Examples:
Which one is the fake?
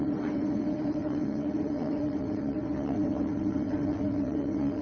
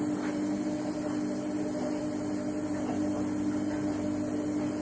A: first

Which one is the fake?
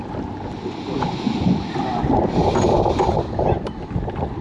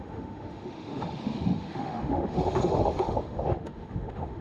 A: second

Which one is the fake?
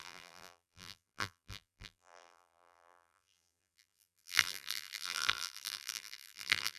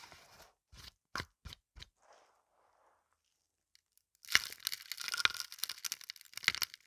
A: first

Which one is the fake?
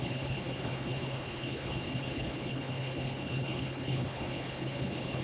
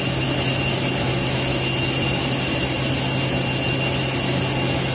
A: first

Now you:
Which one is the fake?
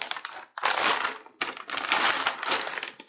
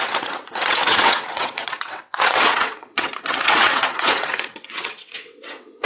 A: second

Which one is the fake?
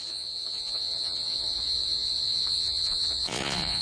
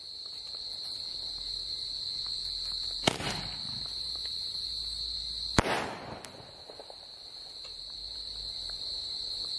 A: first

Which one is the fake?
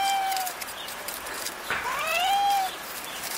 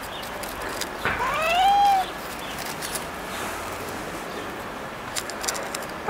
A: first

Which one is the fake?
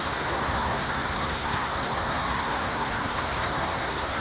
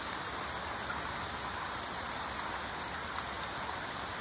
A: first